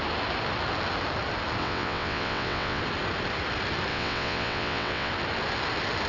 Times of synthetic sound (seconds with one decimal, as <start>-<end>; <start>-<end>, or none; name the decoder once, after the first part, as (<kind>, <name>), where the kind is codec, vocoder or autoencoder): 1.6-2.8 (vocoder, WaveNeXt); 3.9-5.1